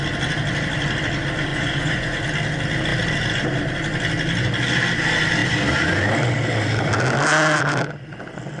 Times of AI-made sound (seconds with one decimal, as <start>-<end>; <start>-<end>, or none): 1.5-2.2